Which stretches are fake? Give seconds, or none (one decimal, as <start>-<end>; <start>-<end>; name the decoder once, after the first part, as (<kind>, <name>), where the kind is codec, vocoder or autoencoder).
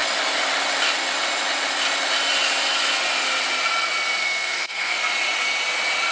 4.2-5.0 (codec, SNAC)